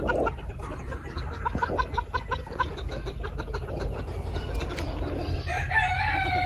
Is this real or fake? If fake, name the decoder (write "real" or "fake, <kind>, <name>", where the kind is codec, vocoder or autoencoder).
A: real